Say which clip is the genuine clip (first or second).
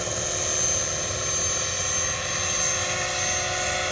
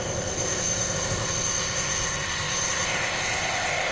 first